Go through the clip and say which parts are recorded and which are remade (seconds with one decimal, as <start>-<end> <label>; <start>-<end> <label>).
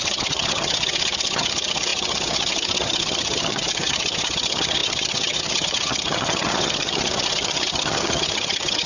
0.0-8.9 remade